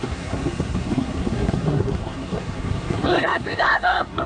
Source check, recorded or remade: remade